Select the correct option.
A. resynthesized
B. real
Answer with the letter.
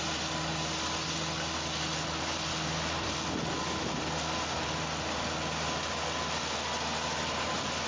B